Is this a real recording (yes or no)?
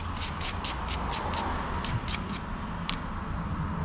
yes